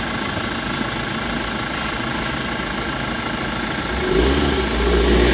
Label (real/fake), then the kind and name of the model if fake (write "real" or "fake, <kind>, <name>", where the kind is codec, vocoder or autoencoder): real